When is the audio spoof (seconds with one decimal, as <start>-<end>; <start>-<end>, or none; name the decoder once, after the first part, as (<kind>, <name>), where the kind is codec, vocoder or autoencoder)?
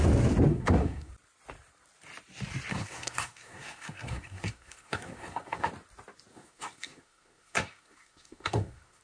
0.5-1.1 (codec, SNAC); 2.7-5.7; 6.3-9.0